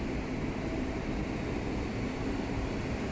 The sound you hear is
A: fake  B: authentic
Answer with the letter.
B